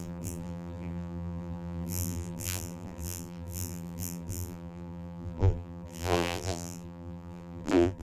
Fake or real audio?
fake